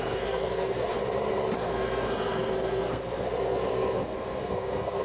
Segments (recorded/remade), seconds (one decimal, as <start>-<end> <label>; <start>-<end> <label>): 0.0-1.0 remade; 1.0-1.6 recorded; 1.6-5.0 remade